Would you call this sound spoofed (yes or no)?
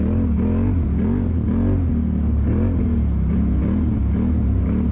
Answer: no